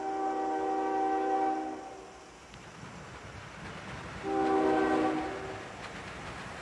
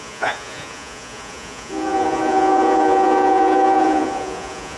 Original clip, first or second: first